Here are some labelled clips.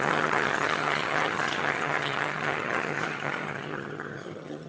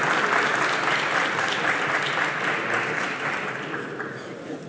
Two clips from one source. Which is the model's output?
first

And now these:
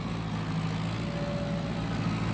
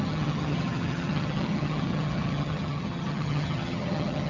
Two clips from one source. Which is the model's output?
second